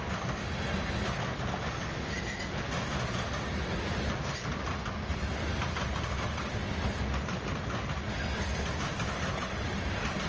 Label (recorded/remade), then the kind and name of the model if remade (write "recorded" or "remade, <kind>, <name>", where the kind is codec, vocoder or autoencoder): recorded